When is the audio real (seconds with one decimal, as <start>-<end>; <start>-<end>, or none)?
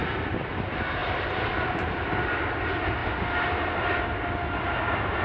0.5-1.0; 2.5-3.0; 3.7-5.2